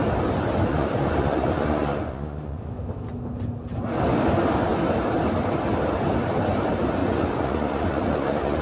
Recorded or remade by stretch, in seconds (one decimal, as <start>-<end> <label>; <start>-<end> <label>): 0.0-0.7 recorded; 0.7-2.7 remade; 2.7-7.0 recorded; 7.0-8.6 remade